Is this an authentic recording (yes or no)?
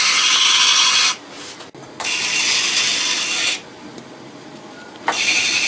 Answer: yes